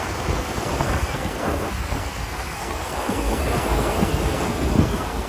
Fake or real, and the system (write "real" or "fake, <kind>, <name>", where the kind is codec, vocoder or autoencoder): fake, codec, SNAC